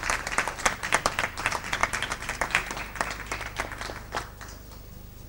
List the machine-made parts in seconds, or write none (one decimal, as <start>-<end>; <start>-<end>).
0.0-1.8